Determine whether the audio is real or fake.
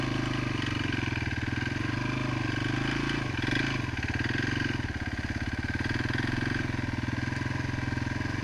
real